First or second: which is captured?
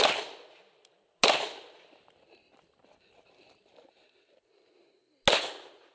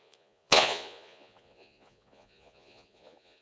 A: first